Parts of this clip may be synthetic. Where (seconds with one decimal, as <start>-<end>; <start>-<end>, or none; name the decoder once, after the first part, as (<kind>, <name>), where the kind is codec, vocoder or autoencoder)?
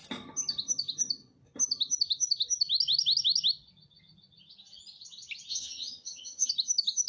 5.5-6.5 (vocoder, HiFi-GAN)